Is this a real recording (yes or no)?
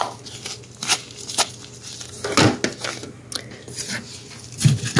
yes